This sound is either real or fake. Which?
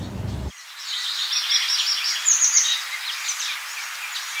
real